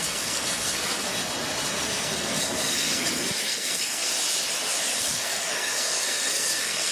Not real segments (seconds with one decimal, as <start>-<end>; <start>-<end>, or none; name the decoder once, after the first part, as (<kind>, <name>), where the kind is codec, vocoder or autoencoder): 0.0-1.1 (codec, SNAC); 1.8-4.1; 5.0-6.9